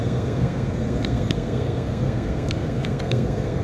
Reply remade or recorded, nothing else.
remade